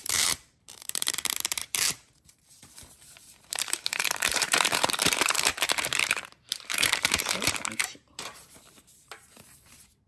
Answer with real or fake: fake